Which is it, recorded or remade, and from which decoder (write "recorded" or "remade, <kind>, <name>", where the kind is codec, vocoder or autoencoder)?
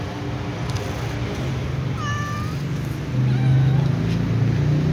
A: recorded